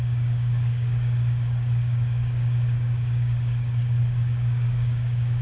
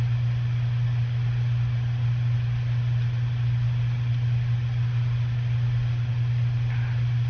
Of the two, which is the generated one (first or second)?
first